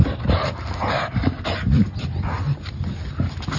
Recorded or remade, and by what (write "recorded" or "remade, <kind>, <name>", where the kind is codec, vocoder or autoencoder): recorded